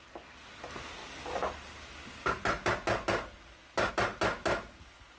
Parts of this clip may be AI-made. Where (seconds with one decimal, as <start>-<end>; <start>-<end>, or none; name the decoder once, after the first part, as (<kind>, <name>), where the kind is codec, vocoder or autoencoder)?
none